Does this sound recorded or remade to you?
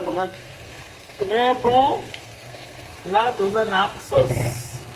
remade